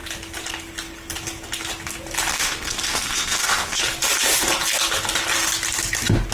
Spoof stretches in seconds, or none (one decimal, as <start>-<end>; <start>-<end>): 2.3-3.8